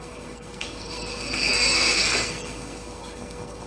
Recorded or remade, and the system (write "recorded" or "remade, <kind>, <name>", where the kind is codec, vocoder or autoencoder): remade, codec, SNAC